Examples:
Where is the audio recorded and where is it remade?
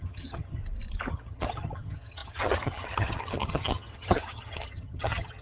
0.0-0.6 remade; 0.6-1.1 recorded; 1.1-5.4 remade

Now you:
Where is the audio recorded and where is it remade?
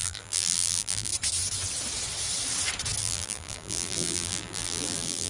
0.0-1.1 remade; 1.1-3.0 recorded; 3.0-5.3 remade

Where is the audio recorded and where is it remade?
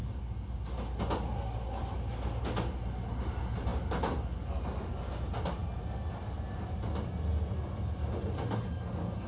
0.0-9.3 recorded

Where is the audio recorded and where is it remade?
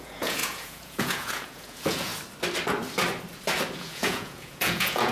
0.0-2.1 remade; 2.1-3.8 recorded; 3.8-5.1 remade